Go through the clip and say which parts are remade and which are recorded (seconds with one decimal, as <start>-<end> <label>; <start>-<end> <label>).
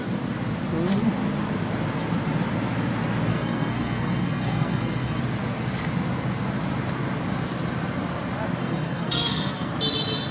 0.0-3.3 recorded; 3.3-5.2 remade; 5.2-8.6 recorded; 8.6-9.7 remade; 9.7-10.3 recorded